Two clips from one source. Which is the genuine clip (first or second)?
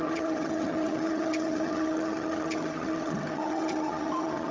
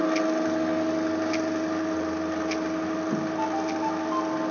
second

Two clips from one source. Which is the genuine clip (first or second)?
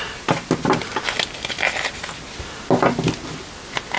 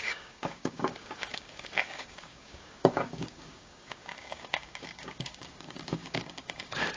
first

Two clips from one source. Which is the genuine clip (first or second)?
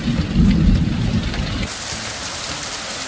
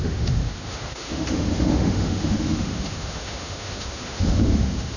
first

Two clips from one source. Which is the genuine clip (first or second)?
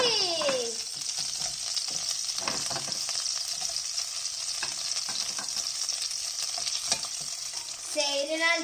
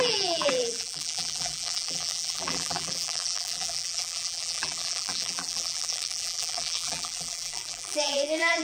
first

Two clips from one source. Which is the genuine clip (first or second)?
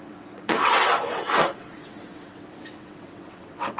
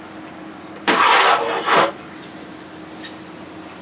second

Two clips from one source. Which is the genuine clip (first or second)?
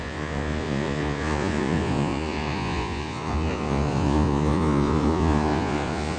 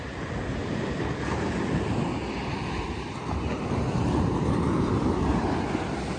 second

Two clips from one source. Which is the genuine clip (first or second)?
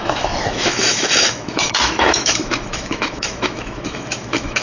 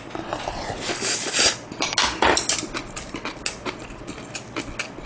second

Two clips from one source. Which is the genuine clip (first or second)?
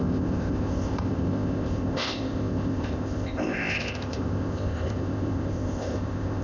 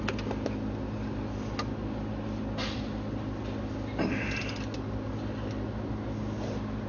second